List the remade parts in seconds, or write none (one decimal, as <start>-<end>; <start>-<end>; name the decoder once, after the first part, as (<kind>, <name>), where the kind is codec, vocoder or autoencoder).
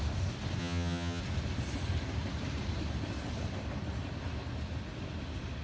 0.6-1.2 (vocoder, HiFi-GAN)